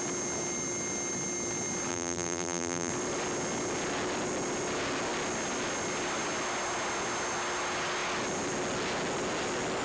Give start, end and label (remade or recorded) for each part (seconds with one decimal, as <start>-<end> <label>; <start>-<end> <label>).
0.0-1.9 recorded; 1.9-2.9 remade; 2.9-9.8 recorded